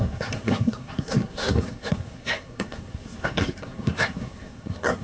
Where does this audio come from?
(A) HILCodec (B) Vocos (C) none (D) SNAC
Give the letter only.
D